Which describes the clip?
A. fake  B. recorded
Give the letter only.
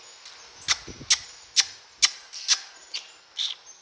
B